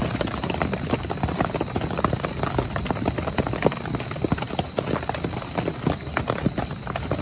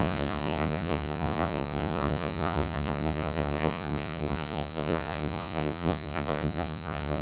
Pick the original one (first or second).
first